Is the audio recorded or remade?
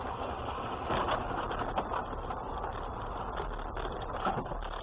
recorded